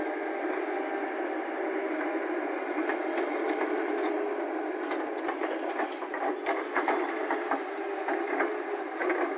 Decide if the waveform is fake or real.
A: real